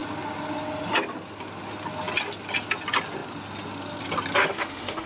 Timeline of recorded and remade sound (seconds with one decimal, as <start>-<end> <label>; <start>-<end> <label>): 0.0-4.4 recorded; 4.4-5.1 remade